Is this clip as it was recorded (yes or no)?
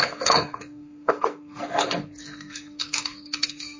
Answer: no